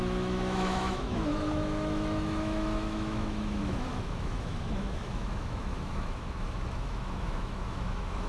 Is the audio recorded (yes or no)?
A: no